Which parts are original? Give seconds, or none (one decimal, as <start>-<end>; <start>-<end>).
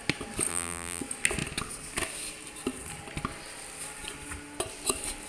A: 0.0-0.5; 1.0-5.3